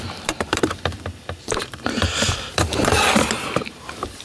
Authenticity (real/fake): fake